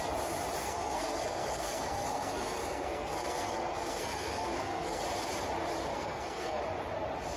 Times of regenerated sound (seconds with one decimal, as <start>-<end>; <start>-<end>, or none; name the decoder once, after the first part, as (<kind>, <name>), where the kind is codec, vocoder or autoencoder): 0.6-5.0 (codec, SNAC); 5.9-6.6